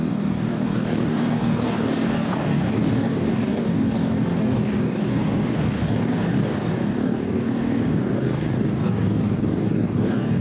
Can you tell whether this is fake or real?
fake